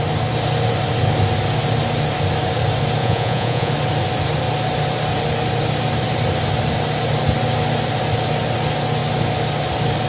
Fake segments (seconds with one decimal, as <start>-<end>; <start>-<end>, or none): 3.0-3.7